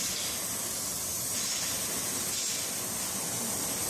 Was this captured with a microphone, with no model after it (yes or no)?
yes